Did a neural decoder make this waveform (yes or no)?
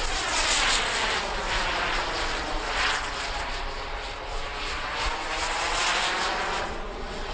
no